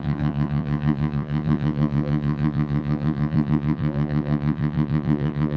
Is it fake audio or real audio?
fake